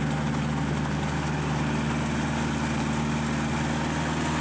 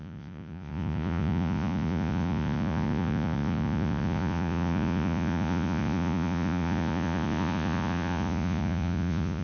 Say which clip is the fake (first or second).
second